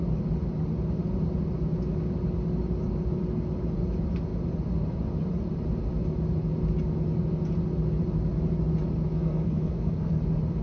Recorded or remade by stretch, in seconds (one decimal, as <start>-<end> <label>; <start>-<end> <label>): 0.0-9.1 recorded; 9.1-10.2 remade; 10.2-10.6 recorded